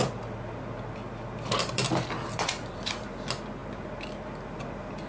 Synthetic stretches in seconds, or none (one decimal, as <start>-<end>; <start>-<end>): none

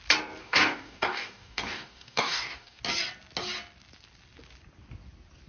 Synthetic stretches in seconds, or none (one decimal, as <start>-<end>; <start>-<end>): 0.4-2.8

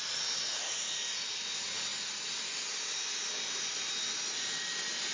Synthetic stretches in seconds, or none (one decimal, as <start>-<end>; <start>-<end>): none

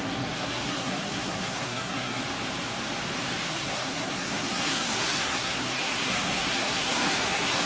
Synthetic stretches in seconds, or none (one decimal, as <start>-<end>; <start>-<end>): 0.0-2.2; 3.5-7.7